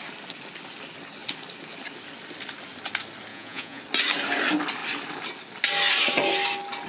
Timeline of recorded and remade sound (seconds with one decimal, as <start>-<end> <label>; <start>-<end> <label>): 0.0-3.3 recorded; 3.3-3.8 remade; 3.8-6.9 recorded